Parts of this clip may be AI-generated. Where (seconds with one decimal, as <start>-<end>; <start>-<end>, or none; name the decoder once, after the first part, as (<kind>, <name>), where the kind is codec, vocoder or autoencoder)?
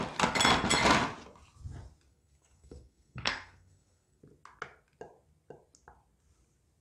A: 2.1-4.2 (codec, SNAC)